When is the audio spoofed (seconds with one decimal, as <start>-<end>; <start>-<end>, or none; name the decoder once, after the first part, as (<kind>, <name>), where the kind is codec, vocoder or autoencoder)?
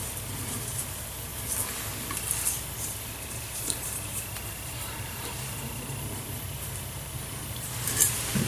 0.0-1.3 (vocoder, BigVGAN v2); 2.7-8.5